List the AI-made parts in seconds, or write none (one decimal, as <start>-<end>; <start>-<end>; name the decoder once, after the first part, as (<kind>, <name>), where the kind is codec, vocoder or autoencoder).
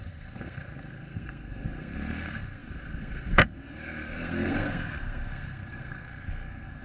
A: 0.0-6.8 (codec, SNAC)